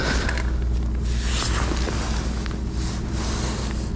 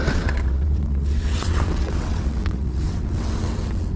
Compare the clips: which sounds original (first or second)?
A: first